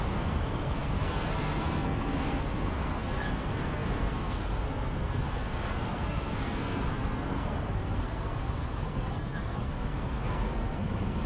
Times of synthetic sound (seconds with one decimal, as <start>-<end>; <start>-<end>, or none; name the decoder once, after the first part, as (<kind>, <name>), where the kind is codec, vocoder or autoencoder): 0.0-11.3 (codec, SNAC)